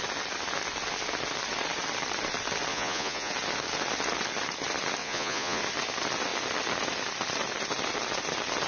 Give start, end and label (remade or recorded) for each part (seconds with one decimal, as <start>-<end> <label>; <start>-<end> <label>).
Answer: 0.0-2.7 recorded; 2.7-3.3 remade; 3.3-5.0 recorded; 5.0-5.6 remade; 5.6-8.7 recorded